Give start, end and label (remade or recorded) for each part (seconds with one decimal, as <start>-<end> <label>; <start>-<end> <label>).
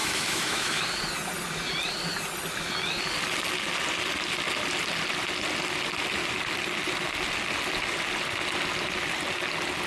0.0-0.8 remade; 0.8-9.9 recorded